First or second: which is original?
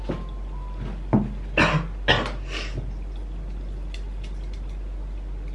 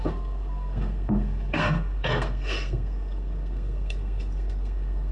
first